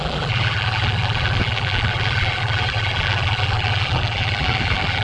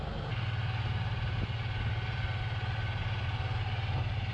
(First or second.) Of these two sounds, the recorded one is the second